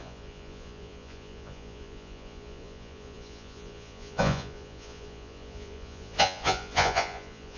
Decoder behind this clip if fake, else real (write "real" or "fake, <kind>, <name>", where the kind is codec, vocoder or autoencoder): fake, vocoder, Vocos